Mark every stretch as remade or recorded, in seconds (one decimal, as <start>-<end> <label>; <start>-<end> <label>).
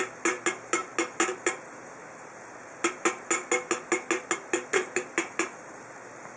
0.0-6.4 recorded